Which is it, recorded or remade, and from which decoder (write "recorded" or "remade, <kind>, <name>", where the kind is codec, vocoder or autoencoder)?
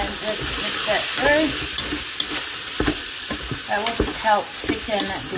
recorded